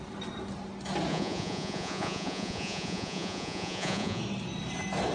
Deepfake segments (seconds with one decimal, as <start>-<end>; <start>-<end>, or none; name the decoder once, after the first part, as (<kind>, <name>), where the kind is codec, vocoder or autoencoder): 1.1-4.2 (vocoder, Vocos)